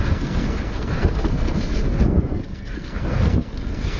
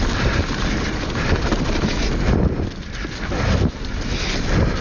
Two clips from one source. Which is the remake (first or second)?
first